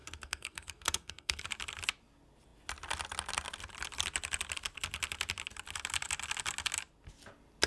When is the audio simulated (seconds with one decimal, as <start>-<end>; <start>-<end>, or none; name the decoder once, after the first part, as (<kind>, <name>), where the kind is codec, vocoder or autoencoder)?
0.0-1.4 (codec, SNAC)